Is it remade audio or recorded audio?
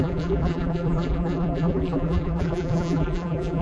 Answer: remade